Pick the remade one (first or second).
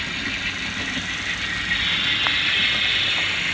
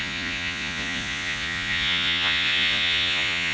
second